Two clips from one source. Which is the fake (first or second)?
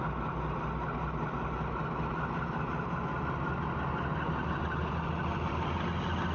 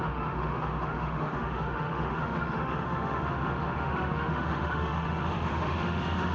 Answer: second